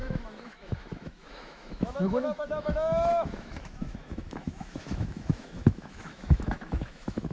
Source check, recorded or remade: remade